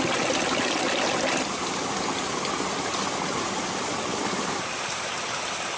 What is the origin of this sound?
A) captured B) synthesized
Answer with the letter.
A